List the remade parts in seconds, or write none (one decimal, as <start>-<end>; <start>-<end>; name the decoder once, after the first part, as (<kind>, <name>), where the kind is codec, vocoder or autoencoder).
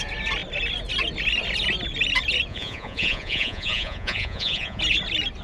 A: 2.5-4.8 (vocoder, Vocos)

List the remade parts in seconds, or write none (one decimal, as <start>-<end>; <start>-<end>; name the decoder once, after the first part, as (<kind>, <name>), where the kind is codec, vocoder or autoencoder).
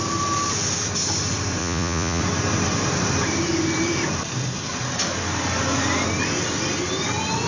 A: 1.6-2.2 (vocoder, Vocos)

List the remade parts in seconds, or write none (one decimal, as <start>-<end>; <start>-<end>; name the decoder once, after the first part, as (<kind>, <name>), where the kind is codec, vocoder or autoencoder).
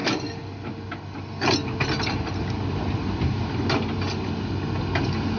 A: none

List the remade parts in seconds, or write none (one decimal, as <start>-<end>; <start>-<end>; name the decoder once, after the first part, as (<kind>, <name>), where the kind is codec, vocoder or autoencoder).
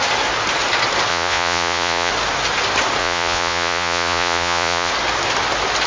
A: 1.1-2.1 (vocoder, Vocos); 3.0-4.9